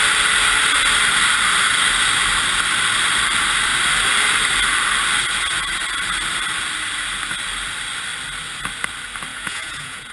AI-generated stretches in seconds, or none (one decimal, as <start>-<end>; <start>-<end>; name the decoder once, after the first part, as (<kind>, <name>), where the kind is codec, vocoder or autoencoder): 9.3-10.1 (vocoder, Vocos)